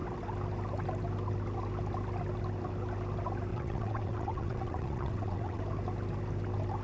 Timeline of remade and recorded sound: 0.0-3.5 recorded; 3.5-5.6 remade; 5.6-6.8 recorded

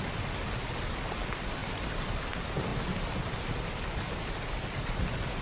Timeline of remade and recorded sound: 0.0-5.4 recorded

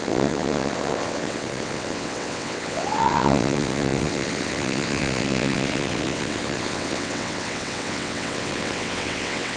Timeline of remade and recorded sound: 0.0-9.6 remade

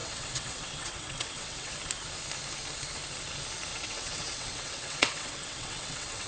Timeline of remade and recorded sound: 0.0-1.7 remade; 1.7-3.7 recorded; 3.7-6.3 remade

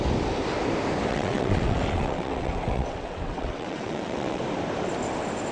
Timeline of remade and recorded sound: 0.0-1.1 recorded; 1.1-4.4 remade; 4.4-5.5 recorded